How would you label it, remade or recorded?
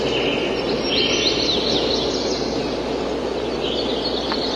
recorded